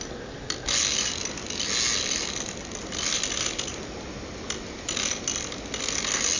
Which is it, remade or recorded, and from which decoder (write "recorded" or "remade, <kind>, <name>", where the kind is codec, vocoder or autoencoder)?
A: recorded